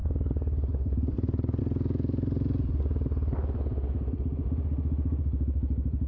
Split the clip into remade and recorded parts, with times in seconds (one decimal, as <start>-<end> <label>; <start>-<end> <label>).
0.0-1.6 remade; 1.6-6.1 recorded